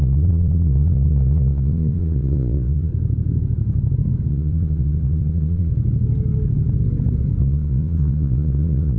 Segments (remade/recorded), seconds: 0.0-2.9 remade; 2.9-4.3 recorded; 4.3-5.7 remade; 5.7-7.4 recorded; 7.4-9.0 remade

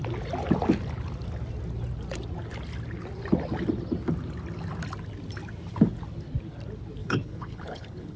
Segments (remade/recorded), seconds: 0.0-7.0 recorded; 7.0-8.2 remade

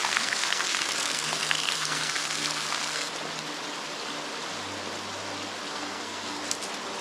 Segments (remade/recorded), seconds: 0.0-3.1 remade; 3.1-5.7 recorded; 5.7-6.4 remade; 6.4-7.0 recorded

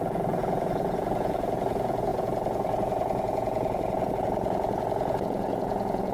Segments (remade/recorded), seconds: 0.0-6.1 remade

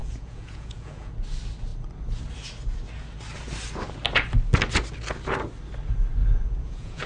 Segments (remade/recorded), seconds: 0.0-1.1 remade; 1.1-6.2 recorded; 6.2-7.1 remade

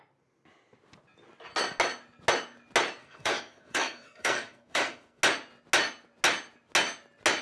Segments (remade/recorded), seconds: 0.0-3.0 recorded; 3.0-5.2 remade; 5.2-7.4 recorded

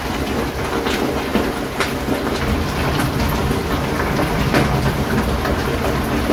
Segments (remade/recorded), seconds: 0.0-6.3 recorded